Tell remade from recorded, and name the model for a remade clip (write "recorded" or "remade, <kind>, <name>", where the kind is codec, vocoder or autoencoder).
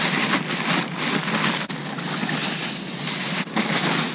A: recorded